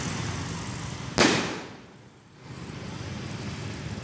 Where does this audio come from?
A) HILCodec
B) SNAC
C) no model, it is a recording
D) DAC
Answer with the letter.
C